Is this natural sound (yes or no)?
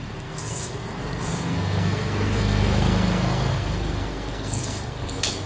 no